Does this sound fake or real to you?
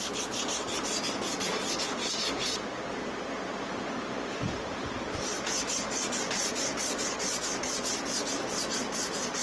real